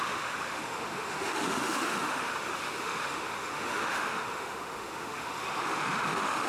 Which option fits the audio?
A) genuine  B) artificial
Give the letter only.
B